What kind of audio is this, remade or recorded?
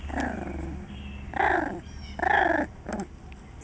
recorded